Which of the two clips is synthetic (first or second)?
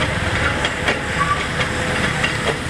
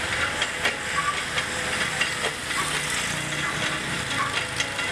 first